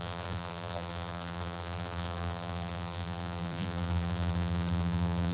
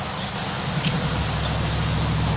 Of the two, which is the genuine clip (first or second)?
second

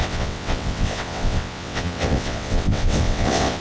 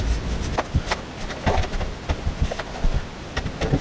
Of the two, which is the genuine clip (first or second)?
second